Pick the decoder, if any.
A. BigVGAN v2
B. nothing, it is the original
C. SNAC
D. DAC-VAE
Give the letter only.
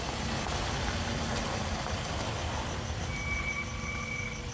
B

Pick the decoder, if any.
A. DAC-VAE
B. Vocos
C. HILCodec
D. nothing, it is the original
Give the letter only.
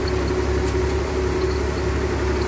D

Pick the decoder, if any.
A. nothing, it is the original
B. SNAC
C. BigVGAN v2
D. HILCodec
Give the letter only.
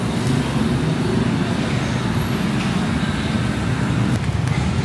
A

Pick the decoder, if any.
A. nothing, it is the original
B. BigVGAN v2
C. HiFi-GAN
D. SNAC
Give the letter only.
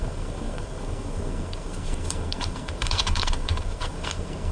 D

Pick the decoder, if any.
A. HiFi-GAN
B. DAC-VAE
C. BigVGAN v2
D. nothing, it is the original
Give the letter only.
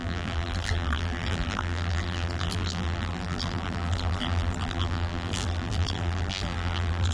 C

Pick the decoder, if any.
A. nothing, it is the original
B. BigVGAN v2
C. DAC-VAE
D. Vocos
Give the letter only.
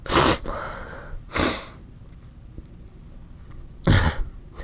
B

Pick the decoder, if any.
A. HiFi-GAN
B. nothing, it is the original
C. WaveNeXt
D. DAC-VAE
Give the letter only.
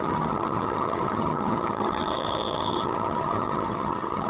A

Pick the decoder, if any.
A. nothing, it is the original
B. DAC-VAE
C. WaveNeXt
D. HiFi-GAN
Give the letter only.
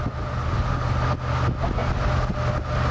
A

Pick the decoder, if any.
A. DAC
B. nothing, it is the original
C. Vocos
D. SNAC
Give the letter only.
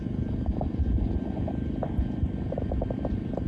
B